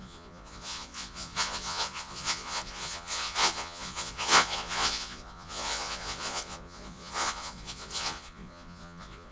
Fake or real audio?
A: fake